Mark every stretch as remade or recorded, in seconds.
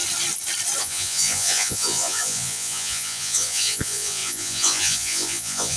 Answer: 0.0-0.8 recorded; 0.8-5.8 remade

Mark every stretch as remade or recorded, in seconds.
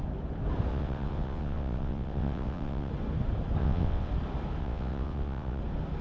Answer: 0.0-0.7 recorded; 0.7-2.9 remade; 2.9-3.6 recorded; 3.6-4.1 remade; 4.1-4.6 recorded; 4.6-5.6 remade; 5.6-6.0 recorded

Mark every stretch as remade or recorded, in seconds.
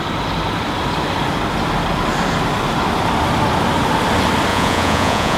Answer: 0.0-4.5 recorded; 4.5-5.4 remade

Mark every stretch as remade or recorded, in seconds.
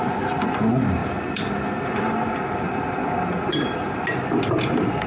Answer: 0.0-5.1 recorded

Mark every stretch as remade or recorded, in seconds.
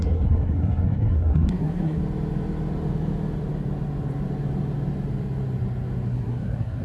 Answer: 0.0-2.0 remade; 2.0-6.1 recorded; 6.1-6.8 remade